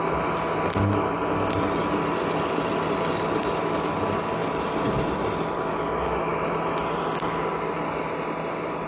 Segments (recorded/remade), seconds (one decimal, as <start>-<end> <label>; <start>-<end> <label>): 0.0-4.4 recorded; 4.4-5.3 remade; 5.3-6.3 recorded; 6.3-7.0 remade; 7.0-8.9 recorded